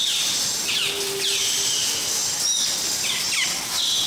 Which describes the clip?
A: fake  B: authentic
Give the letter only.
B